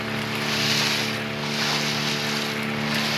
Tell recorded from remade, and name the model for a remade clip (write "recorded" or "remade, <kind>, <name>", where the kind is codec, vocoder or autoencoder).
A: recorded